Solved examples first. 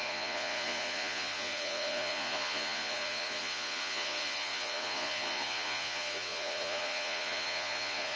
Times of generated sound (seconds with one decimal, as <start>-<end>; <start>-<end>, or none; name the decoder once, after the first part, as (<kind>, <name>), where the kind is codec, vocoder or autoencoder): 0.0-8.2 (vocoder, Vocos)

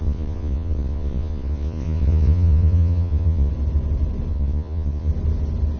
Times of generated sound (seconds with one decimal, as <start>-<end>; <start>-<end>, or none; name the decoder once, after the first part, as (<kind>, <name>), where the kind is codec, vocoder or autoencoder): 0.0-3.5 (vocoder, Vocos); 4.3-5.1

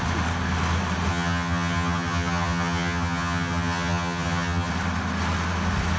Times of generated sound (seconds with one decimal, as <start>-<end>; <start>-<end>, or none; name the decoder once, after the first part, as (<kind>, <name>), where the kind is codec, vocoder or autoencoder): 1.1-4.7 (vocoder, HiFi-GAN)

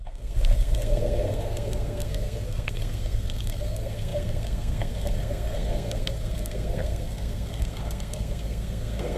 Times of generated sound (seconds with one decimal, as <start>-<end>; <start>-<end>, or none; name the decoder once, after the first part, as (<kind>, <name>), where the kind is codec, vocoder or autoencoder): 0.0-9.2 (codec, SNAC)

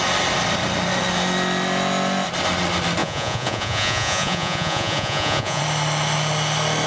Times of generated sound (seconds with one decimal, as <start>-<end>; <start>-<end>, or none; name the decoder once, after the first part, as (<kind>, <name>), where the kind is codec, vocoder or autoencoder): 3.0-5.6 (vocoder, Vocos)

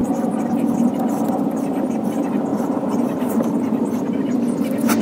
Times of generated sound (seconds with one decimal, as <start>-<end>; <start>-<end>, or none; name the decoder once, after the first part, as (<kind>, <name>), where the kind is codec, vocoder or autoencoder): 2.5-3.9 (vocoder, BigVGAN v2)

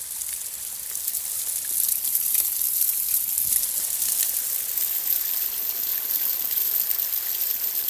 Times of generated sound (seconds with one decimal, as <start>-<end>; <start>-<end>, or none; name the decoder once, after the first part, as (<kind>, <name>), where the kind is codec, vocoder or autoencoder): none